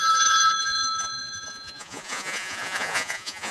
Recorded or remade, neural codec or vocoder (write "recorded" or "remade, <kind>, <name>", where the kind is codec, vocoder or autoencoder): remade, vocoder, Vocos